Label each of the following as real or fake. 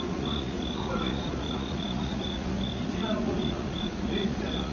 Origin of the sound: fake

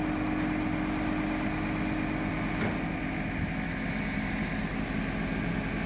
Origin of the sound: real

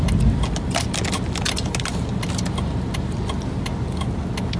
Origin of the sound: real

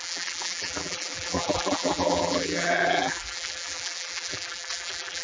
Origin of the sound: fake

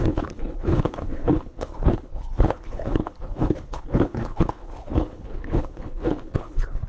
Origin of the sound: fake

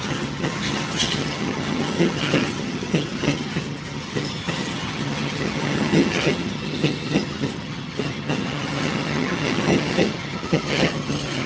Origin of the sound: fake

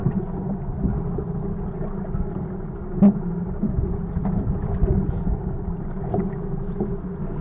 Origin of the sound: real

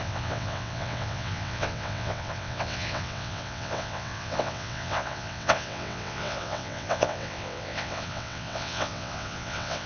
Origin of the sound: fake